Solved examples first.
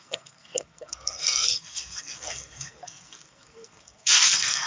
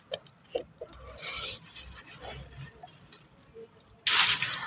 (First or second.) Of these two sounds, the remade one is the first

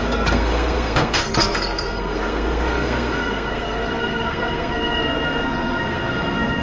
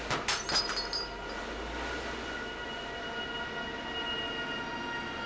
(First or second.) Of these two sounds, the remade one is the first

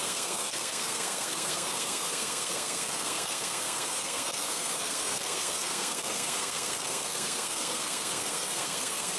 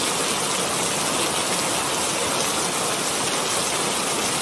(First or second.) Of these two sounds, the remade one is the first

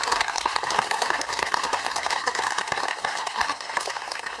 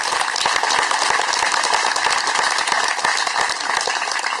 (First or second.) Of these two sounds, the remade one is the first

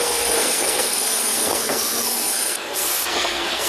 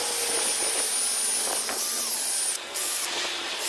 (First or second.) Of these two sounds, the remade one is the first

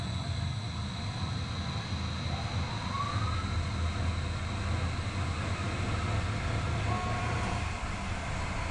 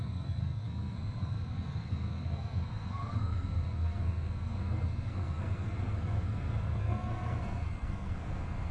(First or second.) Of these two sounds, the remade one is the second